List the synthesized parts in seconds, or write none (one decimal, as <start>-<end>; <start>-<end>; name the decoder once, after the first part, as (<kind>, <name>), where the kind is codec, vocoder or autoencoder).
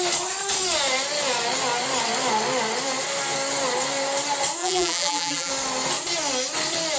4.6-5.5 (vocoder, BigVGAN v2)